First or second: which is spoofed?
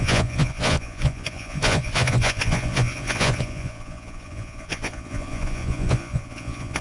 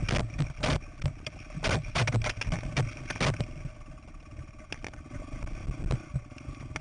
first